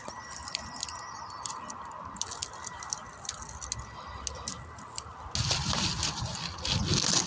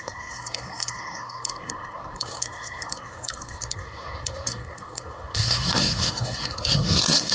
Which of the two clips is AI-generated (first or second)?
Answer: second